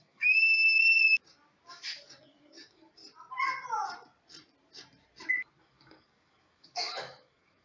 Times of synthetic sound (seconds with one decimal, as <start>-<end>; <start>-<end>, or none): 0.0-1.0; 1.7-3.0; 5.6-7.6